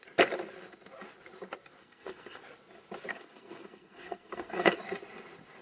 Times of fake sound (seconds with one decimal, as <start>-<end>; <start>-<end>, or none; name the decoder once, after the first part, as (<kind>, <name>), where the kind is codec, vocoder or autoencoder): 1.8-2.4 (codec, SNAC); 3.1-4.8